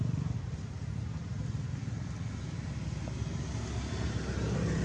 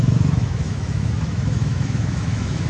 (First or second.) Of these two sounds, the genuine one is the first